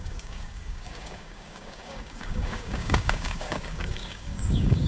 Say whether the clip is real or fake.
fake